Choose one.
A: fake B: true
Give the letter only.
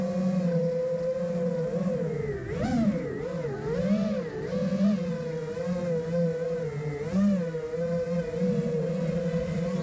B